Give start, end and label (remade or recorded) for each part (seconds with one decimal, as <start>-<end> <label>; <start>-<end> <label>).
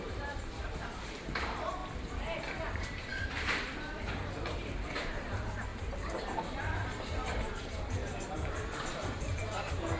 0.0-1.8 remade; 1.8-2.6 recorded; 2.6-5.7 remade; 5.7-6.6 recorded; 6.6-9.4 remade; 9.4-10.0 recorded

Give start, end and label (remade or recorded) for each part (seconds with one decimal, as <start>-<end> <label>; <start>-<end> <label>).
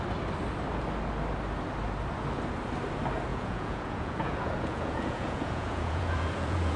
0.0-3.3 recorded; 3.3-6.8 remade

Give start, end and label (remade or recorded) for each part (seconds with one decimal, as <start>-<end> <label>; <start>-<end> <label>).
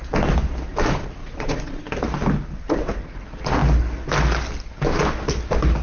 0.0-1.2 recorded; 1.2-1.8 remade; 1.8-5.8 recorded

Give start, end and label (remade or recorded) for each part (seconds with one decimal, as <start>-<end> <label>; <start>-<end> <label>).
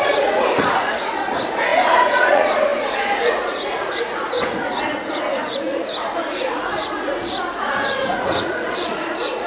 0.0-9.5 remade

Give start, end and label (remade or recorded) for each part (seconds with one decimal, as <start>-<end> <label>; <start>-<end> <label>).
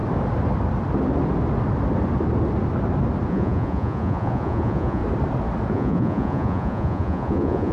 0.0-3.3 recorded; 3.3-5.0 remade; 5.0-5.7 recorded; 5.7-7.7 remade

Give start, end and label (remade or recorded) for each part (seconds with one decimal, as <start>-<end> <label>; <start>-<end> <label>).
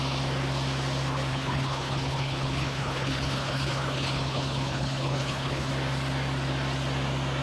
0.0-1.3 recorded; 1.3-5.7 remade; 5.7-7.4 recorded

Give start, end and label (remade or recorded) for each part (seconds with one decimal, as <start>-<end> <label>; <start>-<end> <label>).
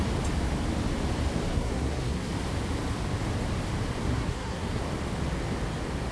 0.0-1.5 recorded; 1.5-2.3 remade; 2.3-4.0 recorded; 4.0-4.8 remade; 4.8-6.1 recorded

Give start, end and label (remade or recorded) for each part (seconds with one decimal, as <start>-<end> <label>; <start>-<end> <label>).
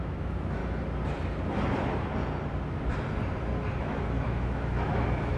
0.0-0.6 remade; 0.6-3.8 recorded; 3.8-5.4 remade